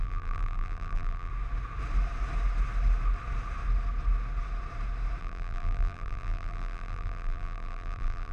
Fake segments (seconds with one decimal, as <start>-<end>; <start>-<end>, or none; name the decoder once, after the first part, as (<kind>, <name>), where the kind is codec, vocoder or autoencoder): 0.0-1.3 (vocoder, BigVGAN v2); 5.2-8.3